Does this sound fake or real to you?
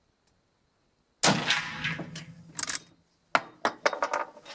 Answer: real